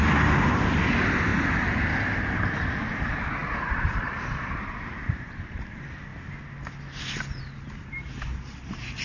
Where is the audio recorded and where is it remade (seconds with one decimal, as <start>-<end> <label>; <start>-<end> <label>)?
0.0-1.3 remade; 1.3-3.0 recorded; 3.0-6.1 remade; 6.1-7.4 recorded; 7.4-9.0 remade